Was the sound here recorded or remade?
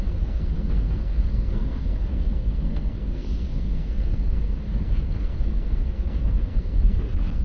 remade